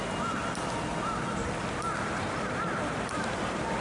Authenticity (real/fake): real